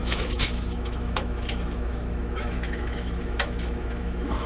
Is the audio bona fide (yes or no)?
no